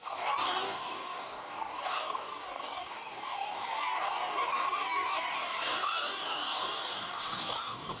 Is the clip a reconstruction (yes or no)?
yes